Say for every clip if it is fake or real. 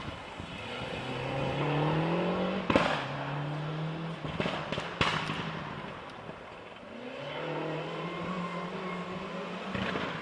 real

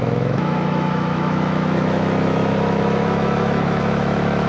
fake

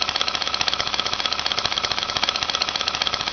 fake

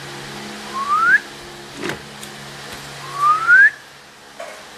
real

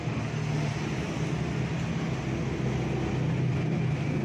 real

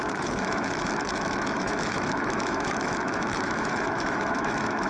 fake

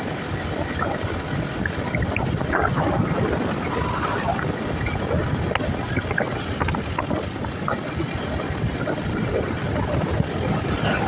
real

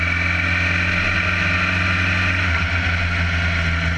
real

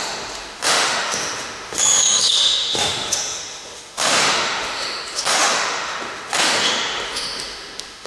fake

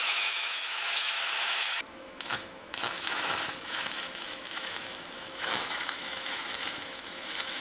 fake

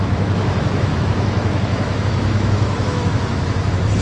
fake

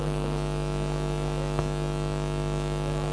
fake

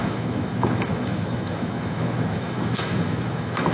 fake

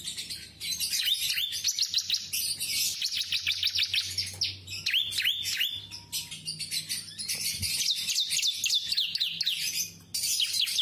real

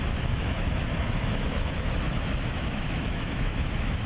fake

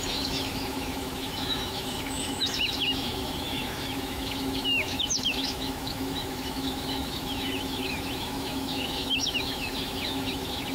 fake